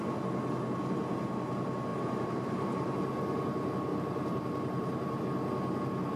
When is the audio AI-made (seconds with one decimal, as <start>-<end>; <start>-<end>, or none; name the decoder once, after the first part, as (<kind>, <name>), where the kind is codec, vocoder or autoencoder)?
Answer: 1.9-3.1 (vocoder, BigVGAN v2); 3.9-5.2